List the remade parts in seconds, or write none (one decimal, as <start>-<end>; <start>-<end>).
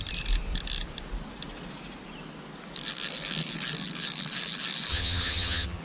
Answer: 4.9-5.8